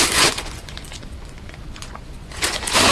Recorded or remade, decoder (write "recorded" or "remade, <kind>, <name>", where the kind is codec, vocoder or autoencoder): remade, vocoder, Vocos